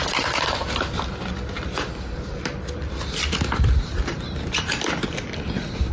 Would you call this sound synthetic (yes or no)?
no